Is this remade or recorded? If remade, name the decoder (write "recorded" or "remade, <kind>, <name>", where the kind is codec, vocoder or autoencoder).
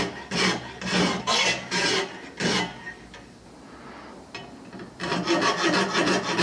recorded